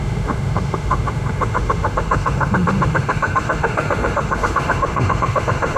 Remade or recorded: remade